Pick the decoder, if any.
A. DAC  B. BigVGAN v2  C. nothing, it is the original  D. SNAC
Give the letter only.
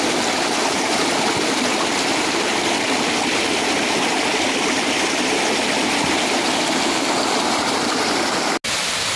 C